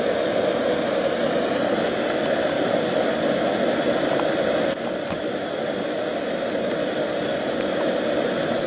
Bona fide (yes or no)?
yes